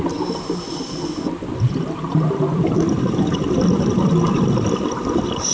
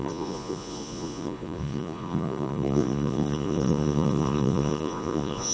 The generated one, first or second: second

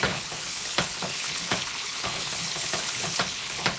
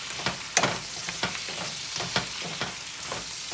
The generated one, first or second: first